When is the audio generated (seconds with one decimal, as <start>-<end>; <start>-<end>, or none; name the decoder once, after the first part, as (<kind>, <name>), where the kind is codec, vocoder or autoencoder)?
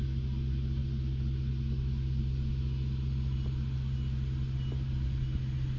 none